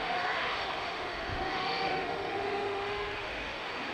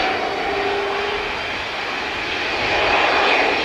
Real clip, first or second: second